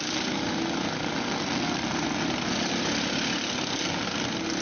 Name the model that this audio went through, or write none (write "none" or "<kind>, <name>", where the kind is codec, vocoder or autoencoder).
none